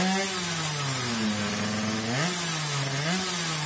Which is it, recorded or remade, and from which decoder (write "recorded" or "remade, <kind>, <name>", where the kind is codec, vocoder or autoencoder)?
recorded